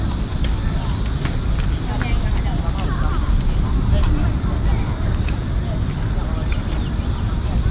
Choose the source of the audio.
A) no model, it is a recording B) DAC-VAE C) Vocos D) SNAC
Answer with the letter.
A